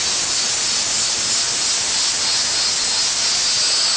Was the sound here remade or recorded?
recorded